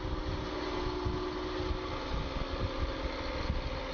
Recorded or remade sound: recorded